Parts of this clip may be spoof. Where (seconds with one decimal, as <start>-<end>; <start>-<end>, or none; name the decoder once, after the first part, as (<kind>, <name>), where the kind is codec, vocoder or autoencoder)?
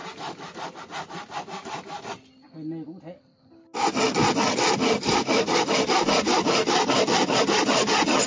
none